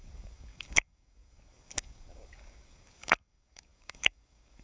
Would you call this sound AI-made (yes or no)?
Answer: yes